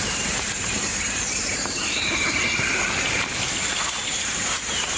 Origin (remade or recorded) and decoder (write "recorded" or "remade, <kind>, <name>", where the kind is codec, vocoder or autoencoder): remade, vocoder, BigVGAN v2